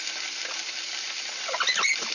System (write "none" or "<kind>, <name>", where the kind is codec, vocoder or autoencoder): none